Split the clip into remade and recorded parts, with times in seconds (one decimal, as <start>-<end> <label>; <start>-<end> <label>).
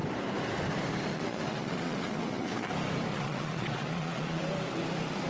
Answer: 0.0-1.1 recorded; 1.1-2.7 remade; 2.7-3.1 recorded; 3.1-4.4 remade; 4.4-5.3 recorded